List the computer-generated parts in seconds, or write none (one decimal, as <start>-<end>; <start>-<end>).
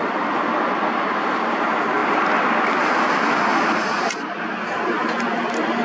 3.5-4.1